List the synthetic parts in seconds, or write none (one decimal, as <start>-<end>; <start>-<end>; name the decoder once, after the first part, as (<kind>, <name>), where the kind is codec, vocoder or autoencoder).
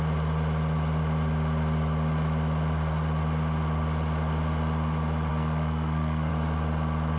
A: 5.3-6.3 (codec, SNAC)